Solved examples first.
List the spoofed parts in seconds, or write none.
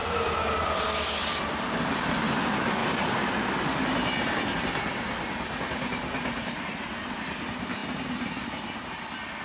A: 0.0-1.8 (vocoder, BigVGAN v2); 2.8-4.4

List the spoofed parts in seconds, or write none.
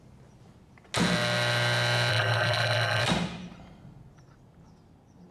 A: 2.1-3.0 (vocoder, BigVGAN v2)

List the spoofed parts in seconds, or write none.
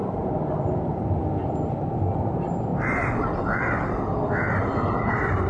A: 0.0-1.2 (vocoder, BigVGAN v2); 2.2-4.1; 4.6-5.5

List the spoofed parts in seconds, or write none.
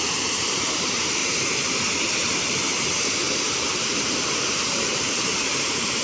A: 0.0-1.2 (vocoder, BigVGAN v2); 2.0-6.0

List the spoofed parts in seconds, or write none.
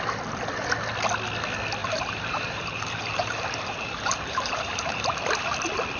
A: 1.8-5.2 (vocoder, BigVGAN v2)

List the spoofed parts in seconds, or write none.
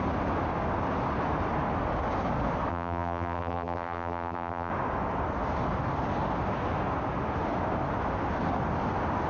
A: 2.7-4.7 (vocoder, BigVGAN v2)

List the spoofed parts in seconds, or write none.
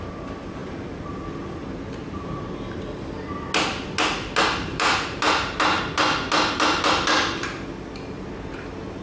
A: 4.7-5.6 (vocoder, BigVGAN v2)